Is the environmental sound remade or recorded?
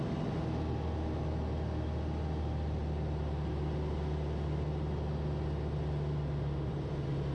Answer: recorded